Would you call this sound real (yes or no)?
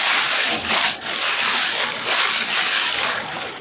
no